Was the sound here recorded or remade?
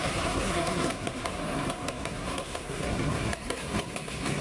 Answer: remade